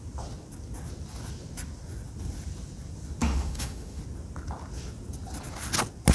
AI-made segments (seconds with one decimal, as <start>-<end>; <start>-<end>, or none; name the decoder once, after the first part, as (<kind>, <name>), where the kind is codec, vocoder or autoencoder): 3.2-4.0 (autoencoder, DAC-VAE)